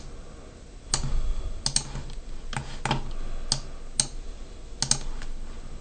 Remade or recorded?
recorded